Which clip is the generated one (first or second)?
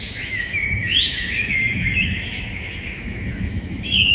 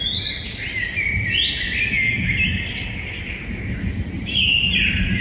first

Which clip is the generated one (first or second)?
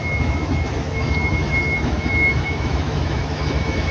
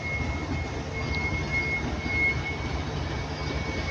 first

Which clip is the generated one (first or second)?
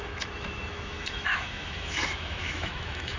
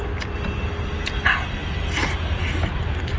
first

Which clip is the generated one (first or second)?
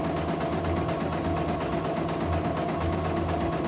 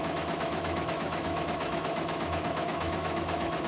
second